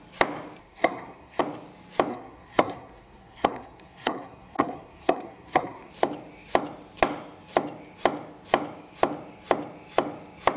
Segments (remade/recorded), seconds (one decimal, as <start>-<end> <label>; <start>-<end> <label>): 0.0-0.6 recorded; 0.6-1.4 remade; 1.4-2.1 recorded; 2.1-5.9 remade; 5.9-10.6 recorded